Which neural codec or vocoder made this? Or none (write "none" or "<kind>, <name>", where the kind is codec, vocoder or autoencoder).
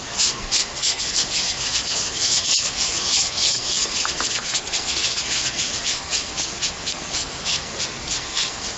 codec, SNAC